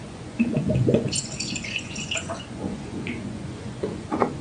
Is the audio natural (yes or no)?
no